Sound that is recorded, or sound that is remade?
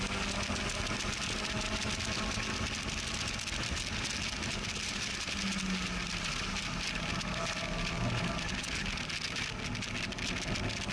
recorded